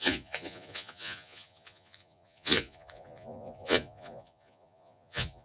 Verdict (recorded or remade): remade